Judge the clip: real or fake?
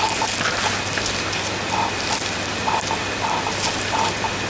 real